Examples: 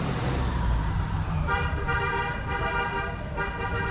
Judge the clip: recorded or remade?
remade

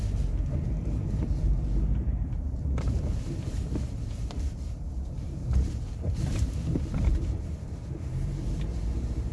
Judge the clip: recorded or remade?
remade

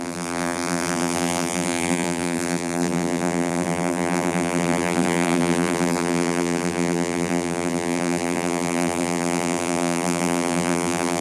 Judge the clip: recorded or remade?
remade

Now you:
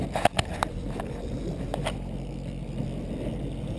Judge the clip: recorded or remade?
remade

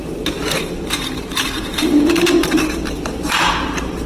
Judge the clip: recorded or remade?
remade